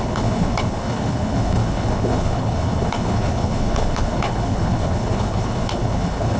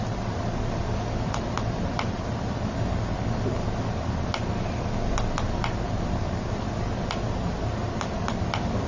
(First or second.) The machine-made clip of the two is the first